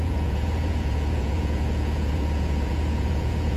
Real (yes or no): no